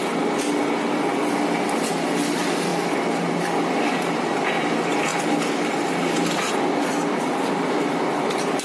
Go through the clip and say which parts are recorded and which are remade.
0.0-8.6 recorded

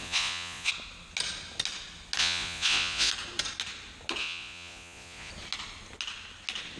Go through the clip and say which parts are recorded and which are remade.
0.0-0.7 remade; 0.7-2.2 recorded; 2.2-3.1 remade; 3.1-4.2 recorded; 4.2-5.3 remade; 5.3-6.8 recorded

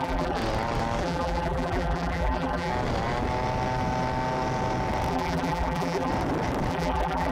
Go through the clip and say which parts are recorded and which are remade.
0.0-0.4 remade; 0.4-1.0 recorded; 1.0-2.7 remade; 2.7-5.1 recorded; 5.1-6.1 remade; 6.1-6.7 recorded; 6.7-7.3 remade